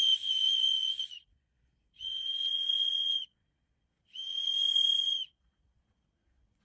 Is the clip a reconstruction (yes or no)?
yes